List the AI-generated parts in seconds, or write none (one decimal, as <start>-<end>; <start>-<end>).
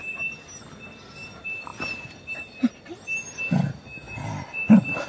none